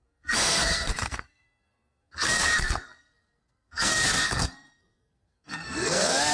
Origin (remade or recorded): remade